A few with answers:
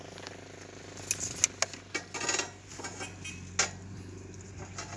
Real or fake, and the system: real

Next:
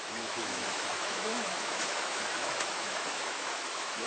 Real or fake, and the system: fake, autoencoder, DAC-VAE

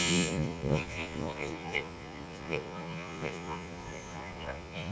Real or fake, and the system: fake, vocoder, Vocos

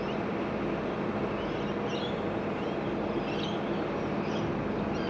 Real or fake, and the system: real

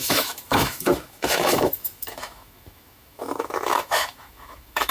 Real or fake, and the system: fake, autoencoder, DAC-VAE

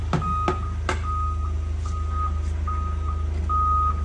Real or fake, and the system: real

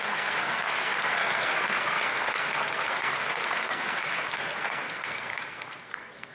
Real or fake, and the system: fake, codec, SNAC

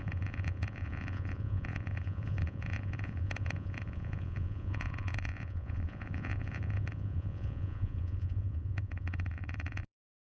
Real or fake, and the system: fake, vocoder, Vocos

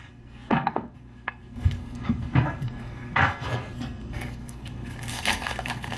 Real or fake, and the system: fake, codec, SNAC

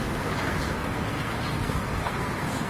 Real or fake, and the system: fake, codec, SNAC